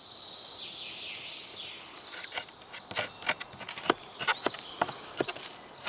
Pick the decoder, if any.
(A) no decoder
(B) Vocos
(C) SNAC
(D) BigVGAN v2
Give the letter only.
A